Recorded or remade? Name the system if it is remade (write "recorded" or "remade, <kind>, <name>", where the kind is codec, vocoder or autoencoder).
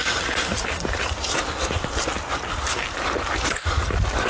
recorded